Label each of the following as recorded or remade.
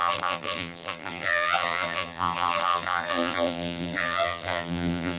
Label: remade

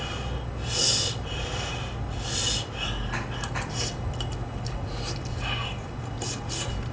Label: recorded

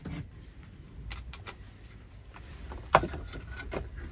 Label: recorded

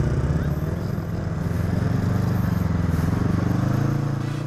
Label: recorded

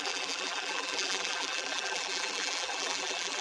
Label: remade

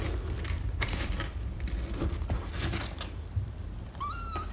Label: remade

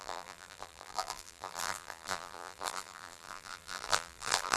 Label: remade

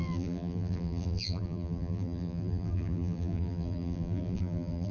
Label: remade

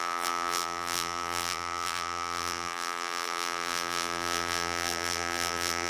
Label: remade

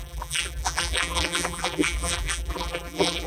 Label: remade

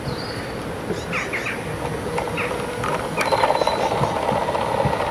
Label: recorded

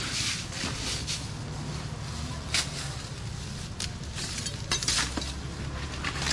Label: recorded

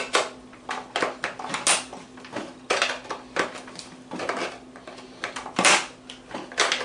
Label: recorded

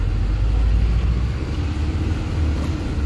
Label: recorded